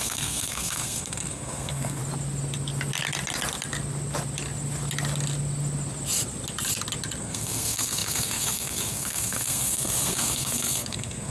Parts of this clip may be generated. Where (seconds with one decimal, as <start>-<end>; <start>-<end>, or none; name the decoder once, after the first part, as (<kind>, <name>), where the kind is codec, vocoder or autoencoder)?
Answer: 0.0-2.0 (codec, SNAC); 7.2-11.3